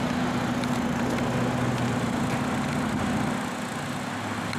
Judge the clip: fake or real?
real